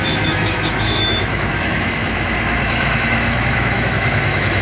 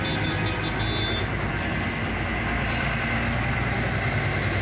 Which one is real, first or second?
second